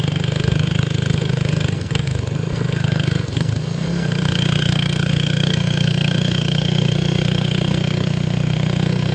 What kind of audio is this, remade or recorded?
remade